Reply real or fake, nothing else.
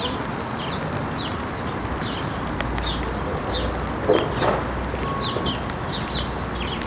real